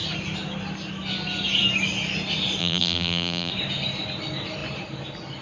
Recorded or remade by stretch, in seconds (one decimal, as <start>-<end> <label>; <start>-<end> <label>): 0.0-2.6 recorded; 2.6-3.5 remade; 3.5-5.4 recorded